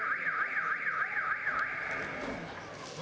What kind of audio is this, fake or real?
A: real